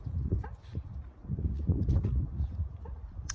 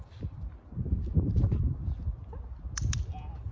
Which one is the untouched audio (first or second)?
second